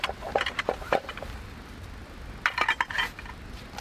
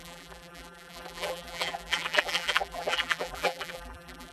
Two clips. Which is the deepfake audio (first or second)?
second